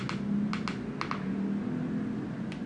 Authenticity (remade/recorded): recorded